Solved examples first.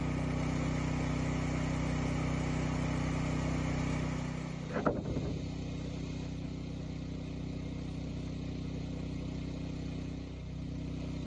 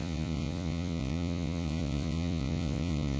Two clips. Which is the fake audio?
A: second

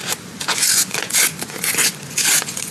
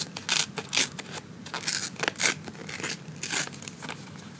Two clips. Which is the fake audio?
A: first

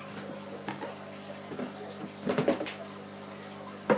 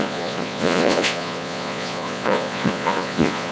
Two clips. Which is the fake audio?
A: second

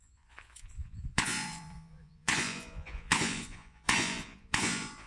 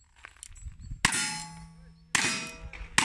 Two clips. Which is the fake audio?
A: first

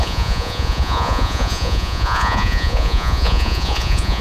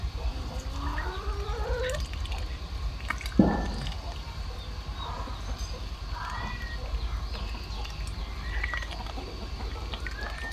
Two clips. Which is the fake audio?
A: first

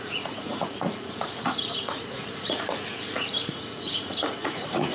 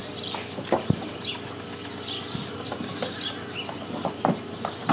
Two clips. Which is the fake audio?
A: first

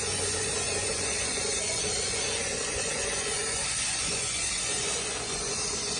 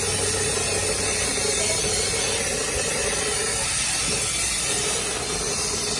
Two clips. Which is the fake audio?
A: first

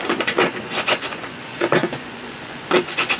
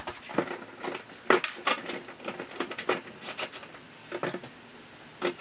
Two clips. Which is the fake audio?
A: first